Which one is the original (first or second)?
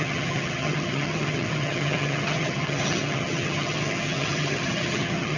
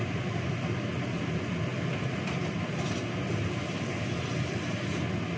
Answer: second